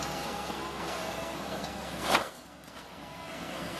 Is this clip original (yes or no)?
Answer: no